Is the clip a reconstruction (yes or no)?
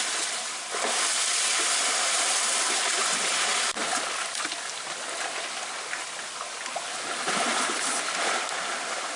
no